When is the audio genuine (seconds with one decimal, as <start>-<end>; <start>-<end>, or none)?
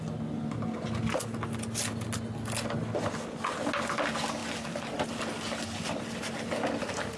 0.0-7.2